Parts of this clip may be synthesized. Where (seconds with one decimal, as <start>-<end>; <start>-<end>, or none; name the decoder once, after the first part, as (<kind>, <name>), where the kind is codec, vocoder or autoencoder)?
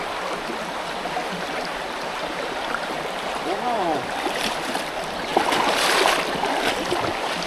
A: 1.2-4.5 (vocoder, BigVGAN v2)